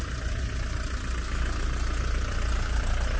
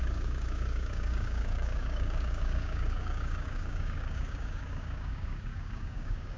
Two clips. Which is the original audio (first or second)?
first